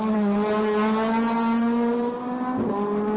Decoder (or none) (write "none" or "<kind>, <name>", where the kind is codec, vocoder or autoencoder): none